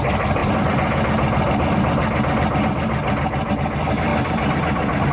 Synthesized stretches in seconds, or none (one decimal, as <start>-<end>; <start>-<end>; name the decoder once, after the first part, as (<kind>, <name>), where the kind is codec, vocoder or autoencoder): none